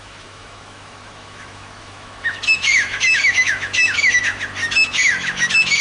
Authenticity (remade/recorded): remade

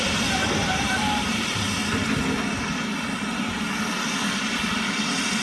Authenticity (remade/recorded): recorded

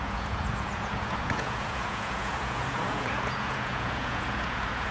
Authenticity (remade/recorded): remade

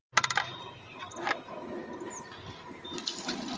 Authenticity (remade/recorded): recorded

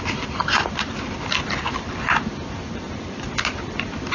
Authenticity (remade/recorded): recorded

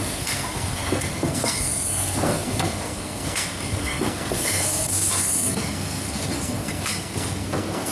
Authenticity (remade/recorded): remade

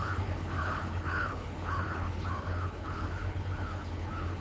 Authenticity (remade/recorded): remade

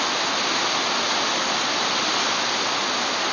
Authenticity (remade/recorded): recorded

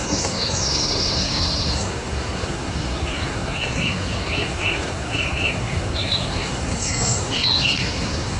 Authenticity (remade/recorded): remade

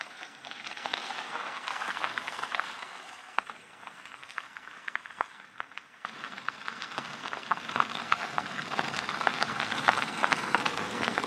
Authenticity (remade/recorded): remade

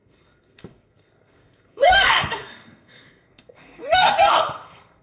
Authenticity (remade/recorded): remade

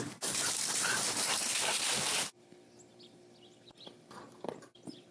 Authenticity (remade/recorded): remade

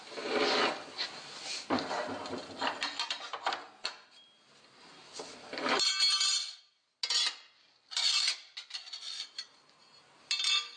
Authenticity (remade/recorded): recorded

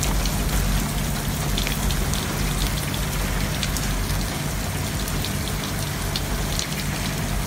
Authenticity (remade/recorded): recorded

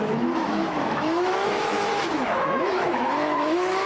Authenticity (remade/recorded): remade